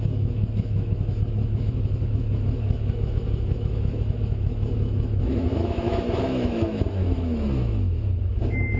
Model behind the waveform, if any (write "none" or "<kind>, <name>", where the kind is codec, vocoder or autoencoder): autoencoder, DAC-VAE